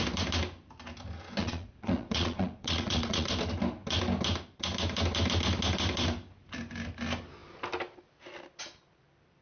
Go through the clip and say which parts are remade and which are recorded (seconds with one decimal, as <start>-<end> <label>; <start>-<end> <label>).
0.0-1.4 recorded; 1.4-3.3 remade; 3.3-9.4 recorded